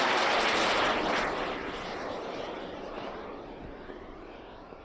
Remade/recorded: remade